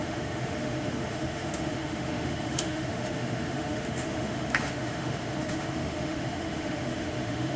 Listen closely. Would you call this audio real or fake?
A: fake